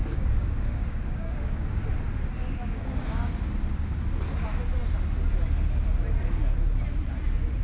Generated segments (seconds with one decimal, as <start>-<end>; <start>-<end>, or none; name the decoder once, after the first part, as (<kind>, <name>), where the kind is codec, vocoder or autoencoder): 0.0-1.8 (codec, DAC); 2.6-3.3